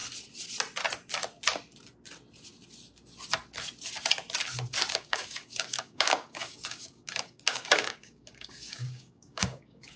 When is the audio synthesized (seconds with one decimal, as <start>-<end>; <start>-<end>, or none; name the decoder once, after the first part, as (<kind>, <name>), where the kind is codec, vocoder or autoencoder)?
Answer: 4.9-10.0 (codec, DAC)